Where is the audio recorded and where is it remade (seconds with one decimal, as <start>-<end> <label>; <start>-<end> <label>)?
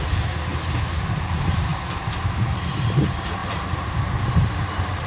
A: 0.0-0.5 remade; 0.5-1.2 recorded; 1.2-1.7 remade; 1.7-2.8 recorded; 2.8-5.1 remade